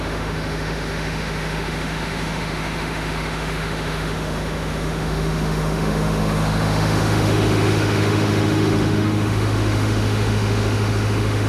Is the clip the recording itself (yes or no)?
no